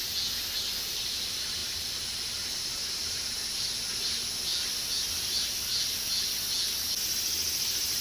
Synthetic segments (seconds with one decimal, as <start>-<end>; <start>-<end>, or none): 4.5-5.7

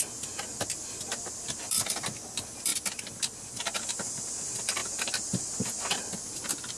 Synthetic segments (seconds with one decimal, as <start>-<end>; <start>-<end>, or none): none